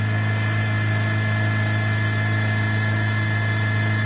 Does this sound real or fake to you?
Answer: real